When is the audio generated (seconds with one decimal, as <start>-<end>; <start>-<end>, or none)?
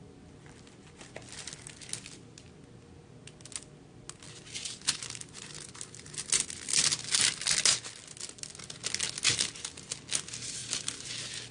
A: none